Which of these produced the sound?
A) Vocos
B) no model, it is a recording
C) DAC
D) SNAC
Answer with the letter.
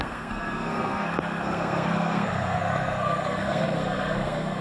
D